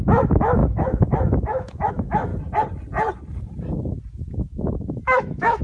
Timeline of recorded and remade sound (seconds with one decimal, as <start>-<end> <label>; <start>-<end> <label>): 0.0-2.3 remade; 2.3-4.3 recorded; 4.3-5.6 remade